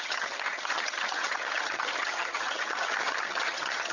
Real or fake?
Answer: fake